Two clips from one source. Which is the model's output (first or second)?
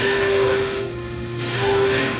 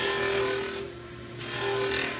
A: first